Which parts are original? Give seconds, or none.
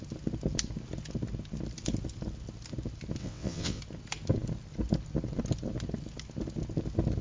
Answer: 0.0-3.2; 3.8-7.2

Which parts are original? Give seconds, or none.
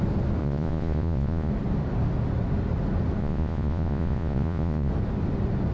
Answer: 0.0-0.4; 1.5-3.2; 4.9-5.7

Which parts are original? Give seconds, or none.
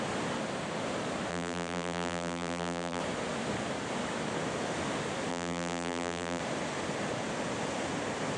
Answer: 0.0-1.3; 3.0-5.3; 6.4-8.4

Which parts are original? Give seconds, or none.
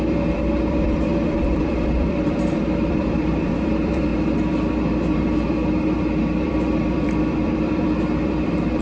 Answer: 4.1-6.2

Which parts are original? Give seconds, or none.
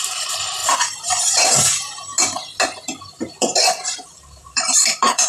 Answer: 2.1-3.1